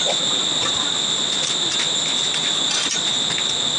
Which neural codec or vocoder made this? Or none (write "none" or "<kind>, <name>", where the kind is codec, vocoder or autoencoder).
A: none